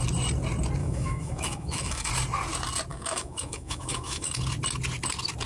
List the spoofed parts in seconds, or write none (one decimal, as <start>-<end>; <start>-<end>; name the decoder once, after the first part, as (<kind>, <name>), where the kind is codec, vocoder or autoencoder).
0.8-2.1 (autoencoder, DAC-VAE); 2.9-4.4

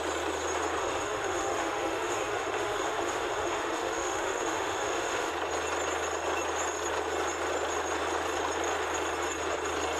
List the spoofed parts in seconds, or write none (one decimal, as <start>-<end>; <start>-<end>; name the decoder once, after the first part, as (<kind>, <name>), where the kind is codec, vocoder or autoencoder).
0.8-5.3 (autoencoder, DAC-VAE)

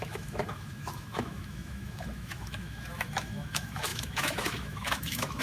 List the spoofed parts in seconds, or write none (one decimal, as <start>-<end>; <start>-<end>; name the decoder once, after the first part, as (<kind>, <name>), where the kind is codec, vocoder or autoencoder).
0.0-5.4 (autoencoder, DAC-VAE)